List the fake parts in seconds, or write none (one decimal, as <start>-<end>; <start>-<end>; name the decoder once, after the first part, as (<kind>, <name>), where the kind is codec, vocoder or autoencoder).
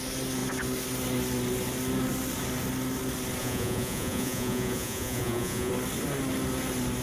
3.4-5.7 (vocoder, Vocos)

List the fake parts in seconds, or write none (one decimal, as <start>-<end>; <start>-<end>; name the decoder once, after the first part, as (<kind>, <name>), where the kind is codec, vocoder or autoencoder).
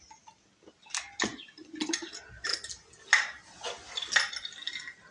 1.3-1.8 (vocoder, BigVGAN v2)